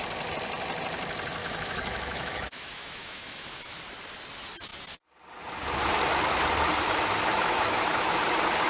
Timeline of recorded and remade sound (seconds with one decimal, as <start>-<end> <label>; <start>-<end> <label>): 0.0-1.4 recorded; 1.4-3.8 remade; 3.8-7.3 recorded; 7.3-8.2 remade; 8.2-8.7 recorded